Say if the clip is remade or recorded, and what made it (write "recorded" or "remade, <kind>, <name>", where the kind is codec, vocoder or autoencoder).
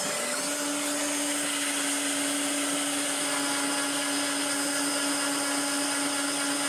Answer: recorded